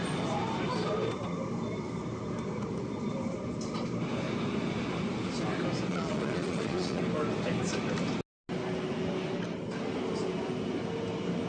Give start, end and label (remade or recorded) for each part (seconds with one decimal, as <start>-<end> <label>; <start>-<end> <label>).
0.0-5.9 recorded; 5.9-7.0 remade; 7.0-11.5 recorded